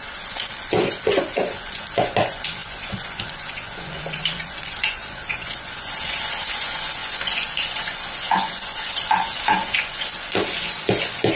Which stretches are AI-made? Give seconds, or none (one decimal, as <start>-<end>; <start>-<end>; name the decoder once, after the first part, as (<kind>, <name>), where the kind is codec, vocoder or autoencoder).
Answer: 0.0-11.4 (vocoder, Vocos)